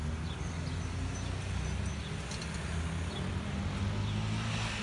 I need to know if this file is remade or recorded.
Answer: recorded